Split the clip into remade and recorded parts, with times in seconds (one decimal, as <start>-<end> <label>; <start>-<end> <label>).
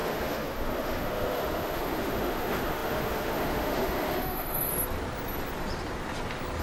0.0-4.7 remade; 4.7-6.6 recorded